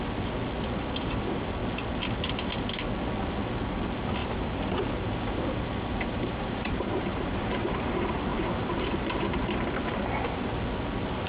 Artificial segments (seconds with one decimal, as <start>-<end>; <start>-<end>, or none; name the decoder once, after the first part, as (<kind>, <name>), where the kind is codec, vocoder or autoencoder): 4.2-7.9 (vocoder, BigVGAN v2); 8.3-10.4